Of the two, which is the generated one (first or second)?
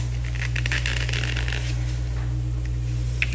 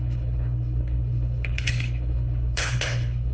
second